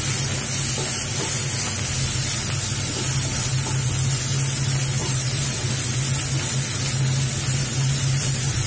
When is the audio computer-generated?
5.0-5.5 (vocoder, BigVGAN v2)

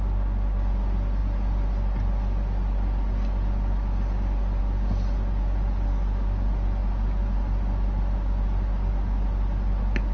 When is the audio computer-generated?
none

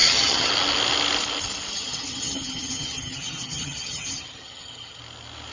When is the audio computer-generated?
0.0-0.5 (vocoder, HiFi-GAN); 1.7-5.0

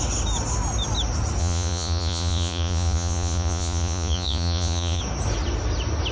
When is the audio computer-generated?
1.4-5.0 (vocoder, Vocos)

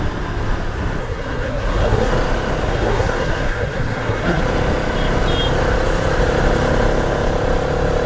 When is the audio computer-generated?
1.0-2.1 (codec, SNAC); 2.6-4.4

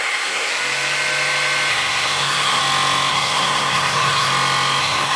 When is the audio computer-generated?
0.0-0.5 (codec, SNAC); 1.7-2.6; 3.1-4.3; 4.8-5.2

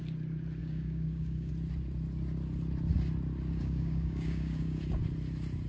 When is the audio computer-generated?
0.6-1.5 (codec, DAC); 3.6-4.8